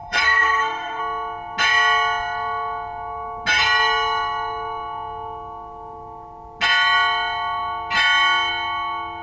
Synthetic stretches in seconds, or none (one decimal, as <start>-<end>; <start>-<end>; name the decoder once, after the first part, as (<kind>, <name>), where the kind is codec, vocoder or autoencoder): 0.0-1.0 (codec, SNAC)